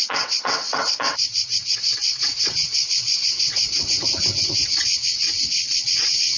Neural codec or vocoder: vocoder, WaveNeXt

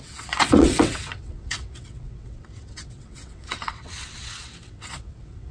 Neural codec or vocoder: vocoder, WaveNeXt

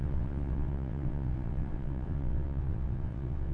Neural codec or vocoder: vocoder, WaveNeXt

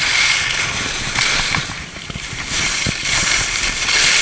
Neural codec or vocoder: none